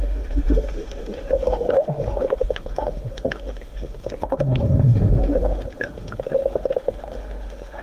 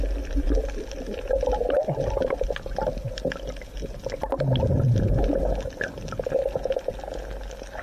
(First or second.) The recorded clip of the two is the second